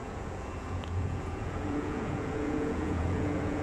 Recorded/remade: remade